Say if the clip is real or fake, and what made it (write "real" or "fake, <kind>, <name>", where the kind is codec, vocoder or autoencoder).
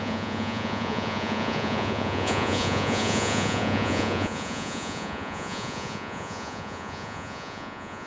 fake, vocoder, Vocos